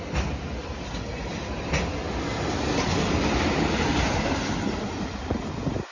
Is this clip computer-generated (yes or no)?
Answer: no